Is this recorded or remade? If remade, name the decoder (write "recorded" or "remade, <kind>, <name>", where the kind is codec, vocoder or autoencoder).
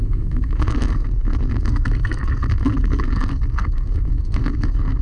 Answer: remade, codec, SNAC